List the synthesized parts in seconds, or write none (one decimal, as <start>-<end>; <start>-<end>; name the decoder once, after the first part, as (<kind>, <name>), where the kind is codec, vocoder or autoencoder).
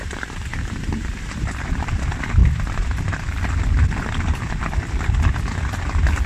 0.0-2.4 (vocoder, BigVGAN v2)